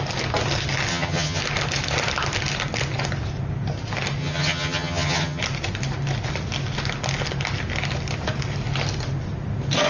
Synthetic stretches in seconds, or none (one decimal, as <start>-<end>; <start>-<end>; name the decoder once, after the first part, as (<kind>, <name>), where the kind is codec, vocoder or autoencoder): 0.9-1.4 (vocoder, HiFi-GAN); 4.2-5.4